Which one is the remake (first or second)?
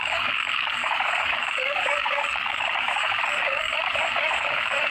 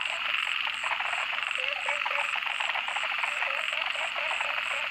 first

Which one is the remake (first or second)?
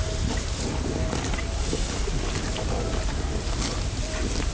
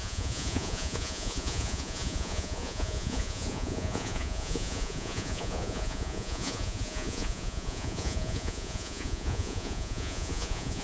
second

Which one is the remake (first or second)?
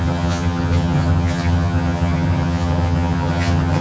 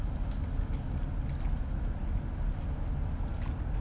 first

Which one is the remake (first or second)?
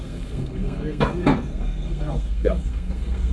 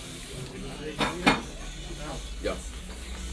first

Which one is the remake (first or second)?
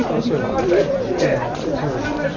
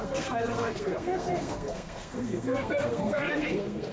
second